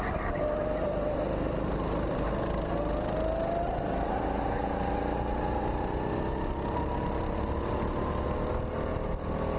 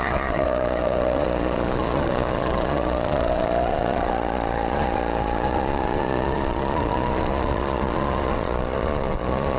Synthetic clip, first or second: second